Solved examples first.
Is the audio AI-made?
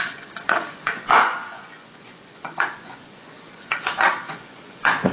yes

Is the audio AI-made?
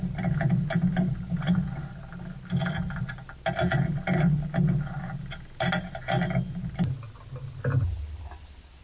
no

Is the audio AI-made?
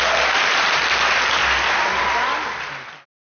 no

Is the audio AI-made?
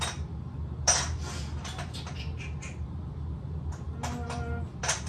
no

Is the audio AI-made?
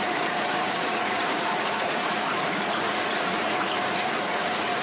yes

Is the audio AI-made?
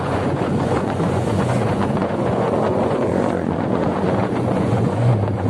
yes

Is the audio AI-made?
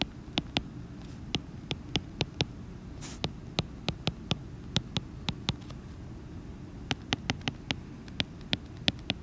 no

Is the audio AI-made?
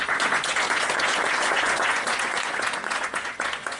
yes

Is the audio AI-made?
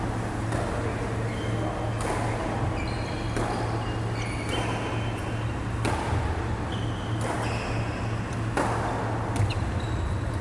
no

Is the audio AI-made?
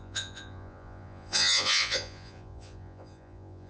yes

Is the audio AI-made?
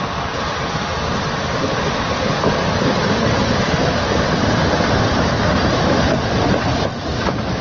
no